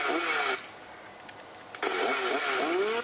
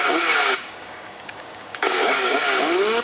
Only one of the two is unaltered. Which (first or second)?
first